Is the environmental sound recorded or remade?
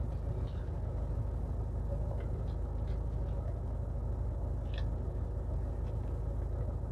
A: recorded